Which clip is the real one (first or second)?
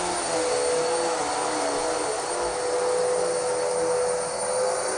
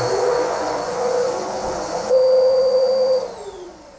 first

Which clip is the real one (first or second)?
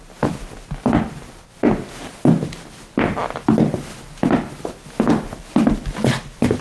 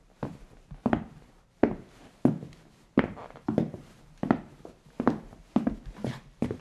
first